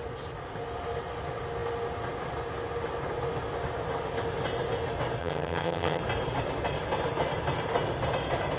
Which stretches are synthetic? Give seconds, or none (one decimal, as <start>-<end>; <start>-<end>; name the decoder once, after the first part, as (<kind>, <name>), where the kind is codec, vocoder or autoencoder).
5.2-6.0 (vocoder, HiFi-GAN)